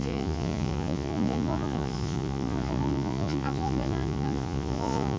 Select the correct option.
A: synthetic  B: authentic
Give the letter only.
A